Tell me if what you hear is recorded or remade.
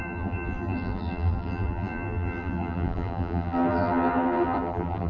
remade